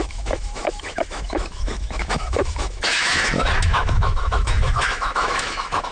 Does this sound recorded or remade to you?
remade